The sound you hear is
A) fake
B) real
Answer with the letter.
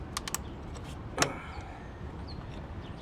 B